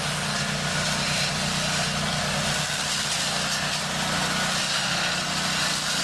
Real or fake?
real